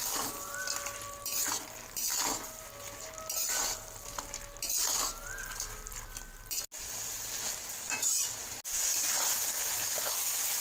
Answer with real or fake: real